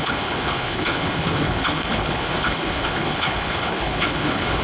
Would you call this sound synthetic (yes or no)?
yes